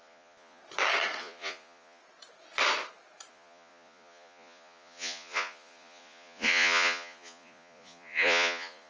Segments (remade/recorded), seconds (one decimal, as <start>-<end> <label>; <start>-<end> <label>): 0.0-0.6 remade; 0.6-1.2 recorded; 1.2-2.0 remade; 2.0-3.3 recorded; 3.3-8.9 remade